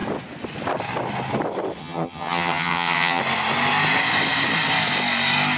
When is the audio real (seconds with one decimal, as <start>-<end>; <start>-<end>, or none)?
0.0-1.8; 3.2-5.6

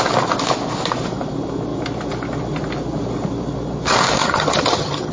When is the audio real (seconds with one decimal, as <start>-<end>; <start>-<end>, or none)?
0.0-4.2